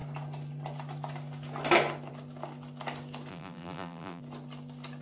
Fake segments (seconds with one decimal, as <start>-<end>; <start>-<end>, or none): 3.3-4.2